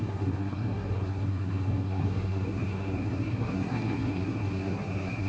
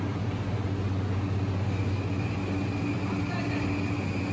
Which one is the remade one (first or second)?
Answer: first